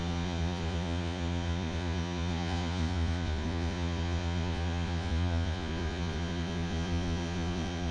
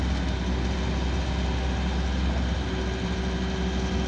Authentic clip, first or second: second